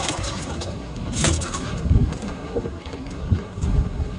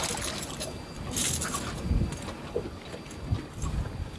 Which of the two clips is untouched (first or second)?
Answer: second